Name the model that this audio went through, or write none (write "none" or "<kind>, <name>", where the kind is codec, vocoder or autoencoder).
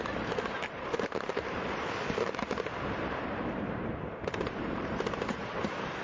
vocoder, BigVGAN v2